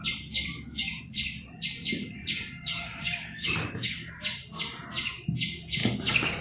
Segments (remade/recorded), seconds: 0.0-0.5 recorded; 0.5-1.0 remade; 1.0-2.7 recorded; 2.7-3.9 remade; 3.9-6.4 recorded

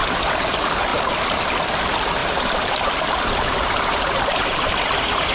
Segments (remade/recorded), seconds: 0.0-2.2 recorded; 2.2-4.7 remade; 4.7-5.3 recorded

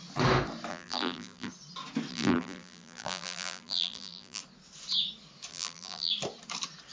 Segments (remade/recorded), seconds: 0.0-0.7 recorded; 0.7-1.5 remade; 1.5-2.1 recorded; 2.1-4.4 remade; 4.4-5.5 recorded; 5.5-6.1 remade; 6.1-6.9 recorded

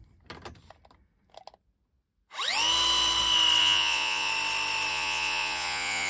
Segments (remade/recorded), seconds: 0.0-3.6 recorded; 3.6-4.3 remade; 4.3-4.9 recorded; 4.9-6.1 remade

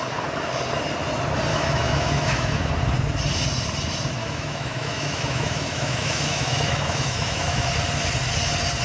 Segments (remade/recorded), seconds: 0.0-1.5 recorded; 1.5-2.7 remade; 2.7-4.2 recorded; 4.2-7.7 remade; 7.7-8.8 recorded

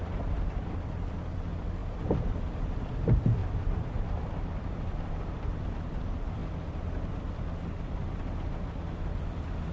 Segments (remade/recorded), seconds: 0.0-1.8 recorded; 1.8-2.9 remade; 2.9-3.4 recorded; 3.4-5.2 remade; 5.2-9.7 recorded